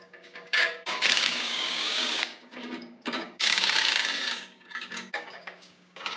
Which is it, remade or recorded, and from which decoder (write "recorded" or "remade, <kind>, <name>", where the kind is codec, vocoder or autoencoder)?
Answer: remade, codec, DAC